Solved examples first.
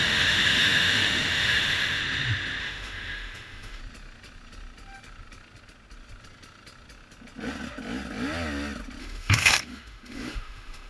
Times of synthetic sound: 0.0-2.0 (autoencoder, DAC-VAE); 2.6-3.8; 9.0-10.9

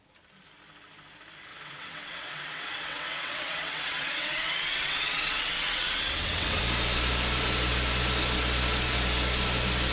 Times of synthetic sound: 1.5-6.6 (vocoder, WaveNeXt)

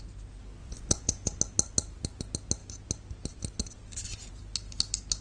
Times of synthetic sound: 0.6-1.4 (vocoder, Vocos)

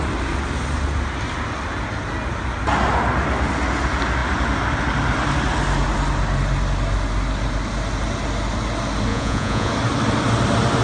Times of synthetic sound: 9.1-9.7 (vocoder, Vocos)

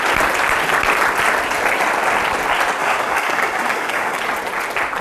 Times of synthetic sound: 2.8-4.2 (codec, DAC)

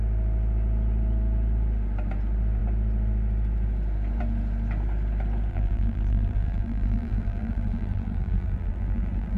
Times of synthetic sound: 5.5-9.4 (vocoder, BigVGAN v2)

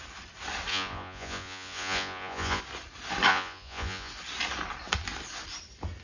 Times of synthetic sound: 0.7-2.6 (vocoder, Vocos); 3.3-4.1

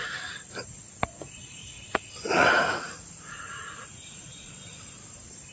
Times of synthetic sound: 1.6-4.5 (vocoder, Vocos)